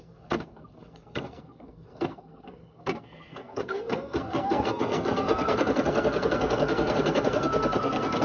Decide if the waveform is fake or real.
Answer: fake